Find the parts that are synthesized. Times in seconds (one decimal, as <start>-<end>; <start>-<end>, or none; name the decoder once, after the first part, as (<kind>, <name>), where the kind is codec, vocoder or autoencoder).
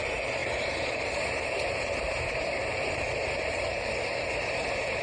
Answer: 0.4-2.2 (vocoder, BigVGAN v2); 2.6-3.9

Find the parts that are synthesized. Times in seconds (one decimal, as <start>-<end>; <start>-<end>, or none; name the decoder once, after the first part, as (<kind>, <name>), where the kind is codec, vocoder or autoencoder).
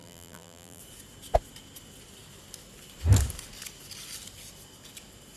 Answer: 0.0-0.8 (vocoder, BigVGAN v2)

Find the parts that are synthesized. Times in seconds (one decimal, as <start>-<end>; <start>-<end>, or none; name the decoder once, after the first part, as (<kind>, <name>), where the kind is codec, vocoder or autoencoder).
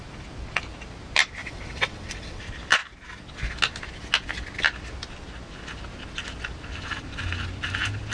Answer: 1.4-2.4 (vocoder, WaveNeXt)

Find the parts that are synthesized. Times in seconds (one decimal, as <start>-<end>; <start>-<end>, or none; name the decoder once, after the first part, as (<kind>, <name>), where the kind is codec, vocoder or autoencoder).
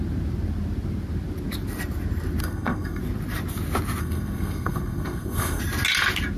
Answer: 2.4-3.0 (codec, SNAC); 4.0-5.6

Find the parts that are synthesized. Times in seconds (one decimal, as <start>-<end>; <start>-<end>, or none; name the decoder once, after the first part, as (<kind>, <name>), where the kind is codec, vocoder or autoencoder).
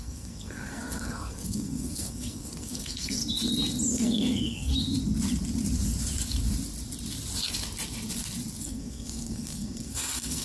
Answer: 0.0-3.2 (codec, SNAC); 3.9-4.7; 8.6-10.4